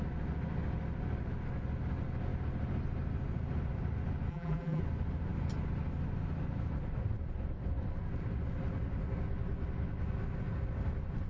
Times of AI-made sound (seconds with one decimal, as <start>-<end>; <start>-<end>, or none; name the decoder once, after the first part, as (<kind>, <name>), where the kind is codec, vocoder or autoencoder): 4.3-4.8 (vocoder, BigVGAN v2)